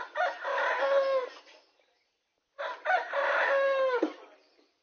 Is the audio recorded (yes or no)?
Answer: yes